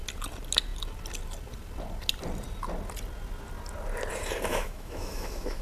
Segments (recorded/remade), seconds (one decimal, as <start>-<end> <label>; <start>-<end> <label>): 0.0-4.5 recorded; 4.5-5.6 remade